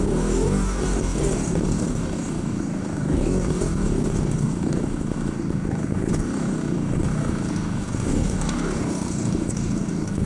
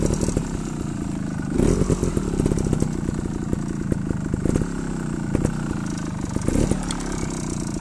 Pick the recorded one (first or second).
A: second